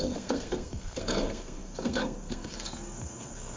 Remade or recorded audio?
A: remade